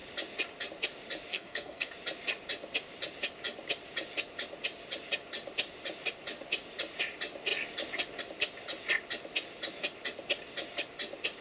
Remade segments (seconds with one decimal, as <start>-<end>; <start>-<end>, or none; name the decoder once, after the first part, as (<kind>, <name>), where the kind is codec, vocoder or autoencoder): 1.3-1.9 (codec, SNAC)